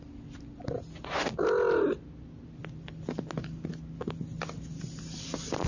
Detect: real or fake real